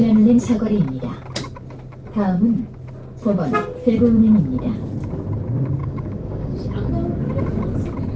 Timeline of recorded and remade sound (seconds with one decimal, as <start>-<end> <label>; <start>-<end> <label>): 0.0-5.8 recorded; 5.8-6.9 remade; 6.9-8.2 recorded